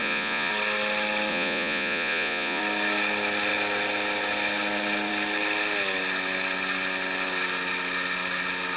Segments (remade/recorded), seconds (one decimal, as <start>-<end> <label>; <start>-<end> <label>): 0.0-0.5 remade; 0.5-1.3 recorded; 1.3-2.6 remade; 2.6-8.8 recorded